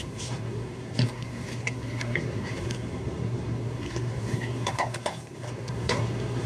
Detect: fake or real fake